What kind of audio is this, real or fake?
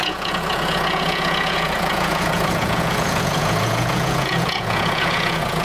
fake